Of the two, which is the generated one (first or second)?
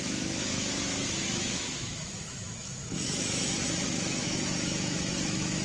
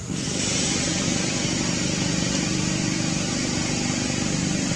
first